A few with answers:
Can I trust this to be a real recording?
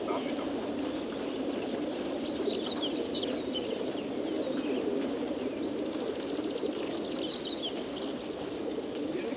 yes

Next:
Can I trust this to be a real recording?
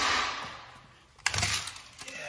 yes